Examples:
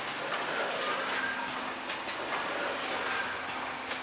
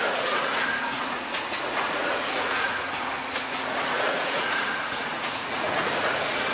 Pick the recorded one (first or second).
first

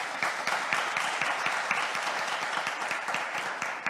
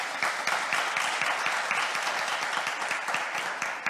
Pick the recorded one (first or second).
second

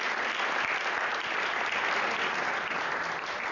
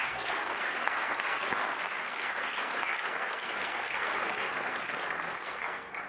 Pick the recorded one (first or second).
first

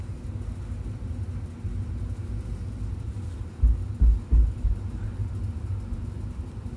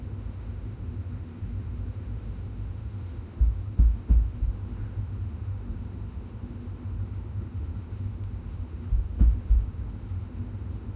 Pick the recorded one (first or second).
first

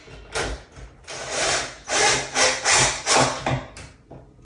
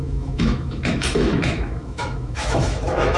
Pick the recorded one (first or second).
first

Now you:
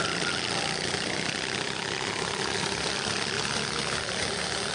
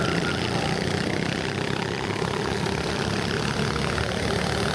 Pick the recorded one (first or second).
first